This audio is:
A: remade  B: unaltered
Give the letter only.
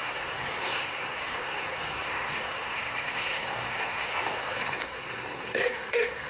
A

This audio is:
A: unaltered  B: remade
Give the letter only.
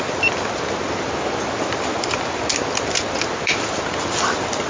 A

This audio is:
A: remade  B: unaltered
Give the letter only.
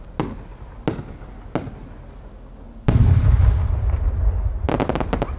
B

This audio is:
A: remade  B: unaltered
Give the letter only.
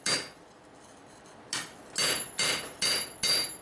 B